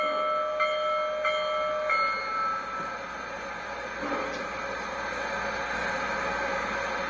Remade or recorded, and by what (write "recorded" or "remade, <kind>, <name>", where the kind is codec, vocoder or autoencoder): recorded